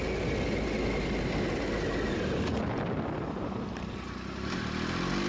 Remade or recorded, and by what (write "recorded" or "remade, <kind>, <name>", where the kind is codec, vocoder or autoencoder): recorded